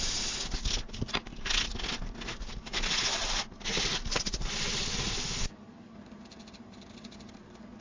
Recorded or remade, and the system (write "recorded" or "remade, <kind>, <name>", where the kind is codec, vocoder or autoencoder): recorded